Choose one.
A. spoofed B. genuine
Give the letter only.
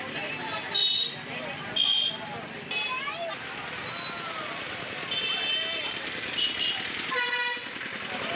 B